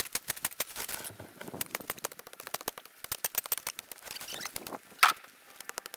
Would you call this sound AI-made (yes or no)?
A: no